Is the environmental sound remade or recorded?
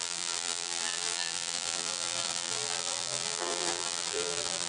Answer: remade